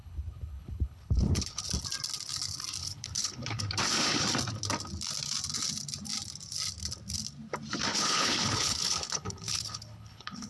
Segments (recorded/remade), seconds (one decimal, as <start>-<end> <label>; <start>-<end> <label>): 0.0-1.6 remade; 1.6-2.8 recorded; 2.8-3.6 remade; 3.6-7.9 recorded; 7.9-10.5 remade

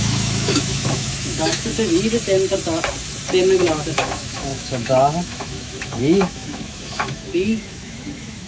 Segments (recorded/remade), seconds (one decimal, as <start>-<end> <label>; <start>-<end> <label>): 0.0-1.7 remade; 1.7-3.6 recorded; 3.6-8.5 remade

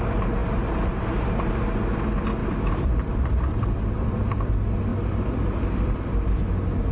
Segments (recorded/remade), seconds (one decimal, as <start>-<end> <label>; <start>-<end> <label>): 0.0-2.4 recorded; 2.4-4.5 remade; 4.5-4.9 recorded; 4.9-6.4 remade; 6.4-6.9 recorded

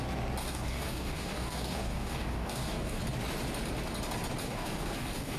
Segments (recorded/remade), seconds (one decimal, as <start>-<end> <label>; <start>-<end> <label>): 0.0-0.4 recorded; 0.4-3.0 remade; 3.0-4.4 recorded; 4.4-5.4 remade

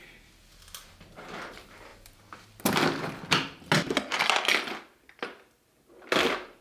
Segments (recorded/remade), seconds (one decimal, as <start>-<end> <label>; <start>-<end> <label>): 0.0-6.6 recorded